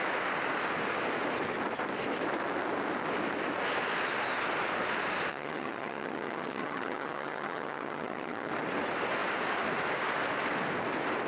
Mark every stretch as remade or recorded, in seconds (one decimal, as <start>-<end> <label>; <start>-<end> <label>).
0.0-5.3 recorded; 5.3-8.5 remade; 8.5-11.3 recorded